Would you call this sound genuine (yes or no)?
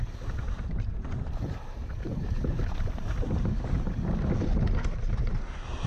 yes